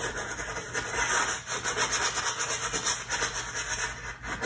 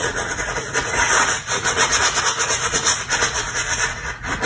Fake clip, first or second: second